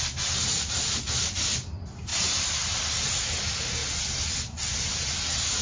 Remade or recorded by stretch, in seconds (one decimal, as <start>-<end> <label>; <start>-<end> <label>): 0.0-5.6 recorded